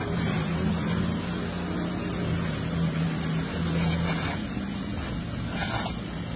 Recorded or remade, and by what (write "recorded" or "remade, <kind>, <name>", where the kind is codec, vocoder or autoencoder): recorded